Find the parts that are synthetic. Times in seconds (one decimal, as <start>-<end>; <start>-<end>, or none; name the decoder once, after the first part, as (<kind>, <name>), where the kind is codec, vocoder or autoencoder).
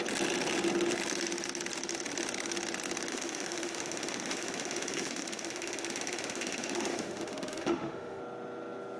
3.1-8.2 (autoencoder, DAC-VAE)